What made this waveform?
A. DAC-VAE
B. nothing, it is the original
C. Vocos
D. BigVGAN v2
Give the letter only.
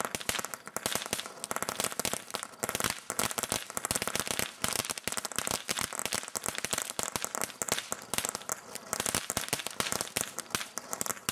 B